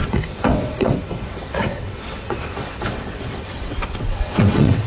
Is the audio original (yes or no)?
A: no